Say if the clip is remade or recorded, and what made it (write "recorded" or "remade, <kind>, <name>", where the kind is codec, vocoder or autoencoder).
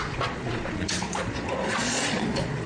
remade, vocoder, Vocos